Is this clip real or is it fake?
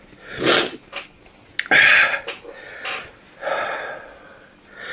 real